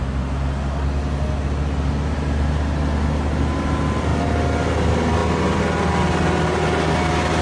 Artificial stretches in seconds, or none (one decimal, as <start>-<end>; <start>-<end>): none